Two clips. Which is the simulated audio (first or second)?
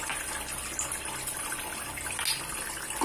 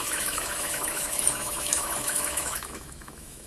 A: second